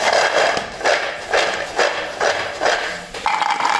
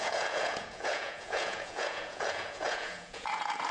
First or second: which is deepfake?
second